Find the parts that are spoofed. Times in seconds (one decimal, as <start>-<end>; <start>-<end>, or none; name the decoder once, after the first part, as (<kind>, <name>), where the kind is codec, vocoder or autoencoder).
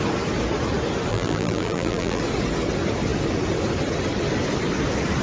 1.1-2.2 (vocoder, BigVGAN v2)